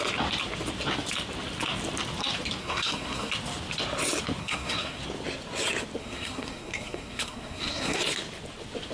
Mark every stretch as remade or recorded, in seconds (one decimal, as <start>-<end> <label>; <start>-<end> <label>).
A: 0.0-2.6 recorded; 2.6-3.3 remade; 3.3-4.4 recorded; 4.4-5.0 remade; 5.0-6.0 recorded; 6.0-8.0 remade; 8.0-8.9 recorded